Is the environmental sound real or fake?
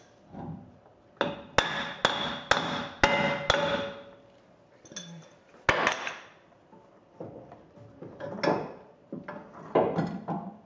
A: real